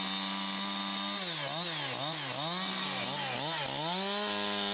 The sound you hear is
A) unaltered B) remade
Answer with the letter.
A